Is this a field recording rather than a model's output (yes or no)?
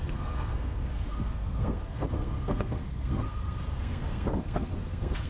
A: no